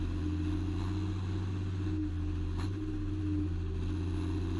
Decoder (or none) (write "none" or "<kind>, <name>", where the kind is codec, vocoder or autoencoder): none